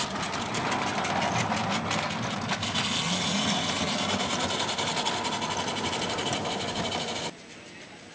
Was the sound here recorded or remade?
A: recorded